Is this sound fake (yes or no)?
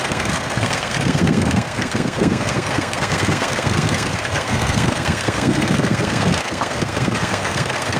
yes